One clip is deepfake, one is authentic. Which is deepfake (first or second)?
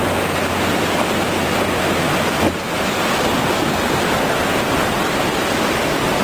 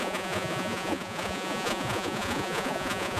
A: second